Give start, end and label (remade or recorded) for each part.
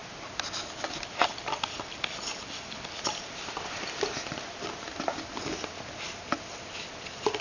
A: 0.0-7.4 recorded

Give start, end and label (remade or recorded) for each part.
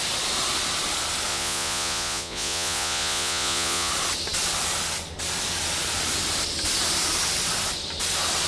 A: 0.0-1.3 recorded; 1.3-3.9 remade; 3.9-8.5 recorded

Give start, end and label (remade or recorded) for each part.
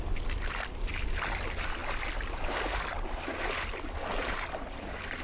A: 0.0-5.2 recorded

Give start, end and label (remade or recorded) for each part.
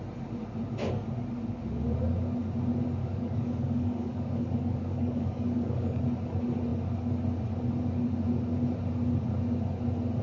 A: 0.0-3.0 recorded; 3.0-6.0 remade; 6.0-10.2 recorded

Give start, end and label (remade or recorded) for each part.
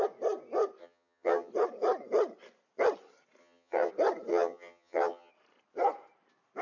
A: 0.0-0.8 recorded; 0.8-1.5 remade; 1.5-3.4 recorded; 3.4-3.9 remade; 3.9-4.3 recorded; 4.3-5.3 remade; 5.3-6.6 recorded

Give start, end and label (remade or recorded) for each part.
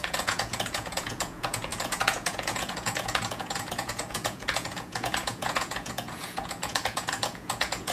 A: 0.0-7.9 remade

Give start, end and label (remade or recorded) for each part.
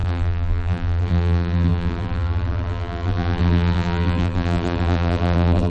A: 0.0-5.7 remade